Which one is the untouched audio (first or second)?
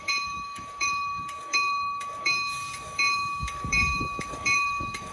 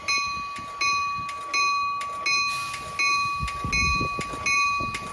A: second